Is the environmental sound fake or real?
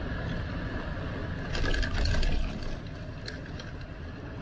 real